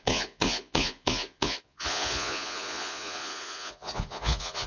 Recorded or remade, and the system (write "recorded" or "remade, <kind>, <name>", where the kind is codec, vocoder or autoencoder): remade, vocoder, Vocos